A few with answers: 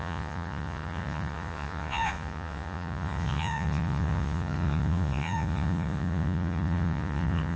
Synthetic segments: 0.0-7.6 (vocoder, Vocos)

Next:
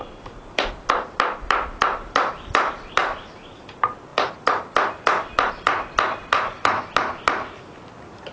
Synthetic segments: none

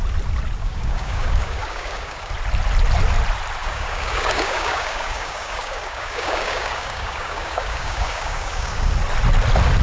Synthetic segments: 0.6-2.3 (codec, DAC); 3.6-8.9

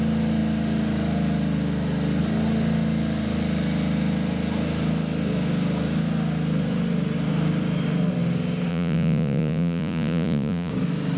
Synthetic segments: 8.7-10.7 (vocoder, Vocos)

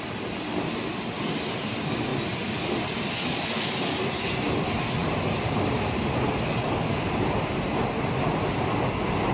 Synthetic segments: 2.1-3.5 (vocoder, BigVGAN v2); 5.0-5.7

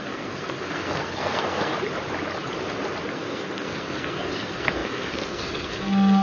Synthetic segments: 0.0-1.7 (codec, SNAC); 3.1-6.2

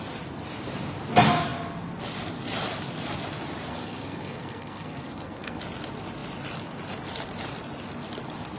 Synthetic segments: 3.7-5.6 (codec, SNAC)

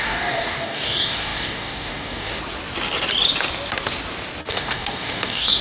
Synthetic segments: 0.0-2.4 (codec, DAC); 4.5-5.6